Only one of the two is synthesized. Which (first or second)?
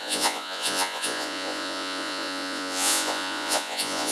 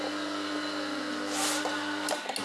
first